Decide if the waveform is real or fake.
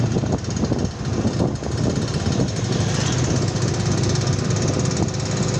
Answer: real